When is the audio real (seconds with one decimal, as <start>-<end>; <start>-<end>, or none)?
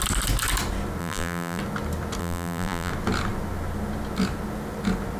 0.0-1.0; 1.6-2.2; 2.9-5.2